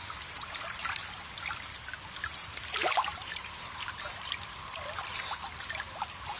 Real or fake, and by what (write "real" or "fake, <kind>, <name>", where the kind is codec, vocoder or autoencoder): real